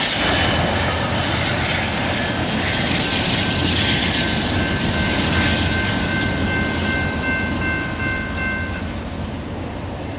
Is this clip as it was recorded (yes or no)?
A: yes